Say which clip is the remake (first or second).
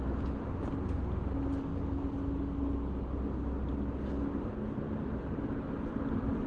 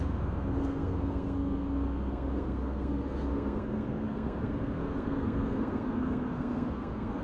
second